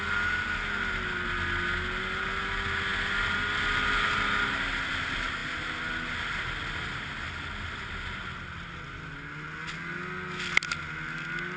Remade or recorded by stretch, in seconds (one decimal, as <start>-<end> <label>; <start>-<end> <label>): 0.0-11.6 recorded